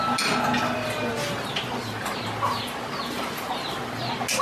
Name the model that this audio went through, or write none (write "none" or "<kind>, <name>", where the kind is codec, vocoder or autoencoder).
none